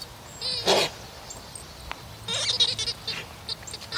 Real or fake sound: real